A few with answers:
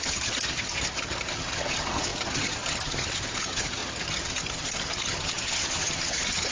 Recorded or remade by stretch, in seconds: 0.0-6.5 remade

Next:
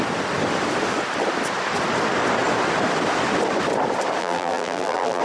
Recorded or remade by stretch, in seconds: 0.0-4.2 recorded; 4.2-5.2 remade

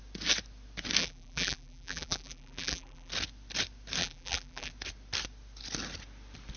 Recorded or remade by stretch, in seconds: 0.0-1.0 recorded; 1.0-3.1 remade; 3.1-4.0 recorded; 4.0-4.7 remade; 4.7-6.6 recorded

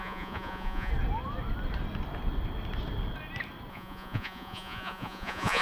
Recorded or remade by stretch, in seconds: 0.0-0.9 remade; 0.9-3.7 recorded; 3.7-5.6 remade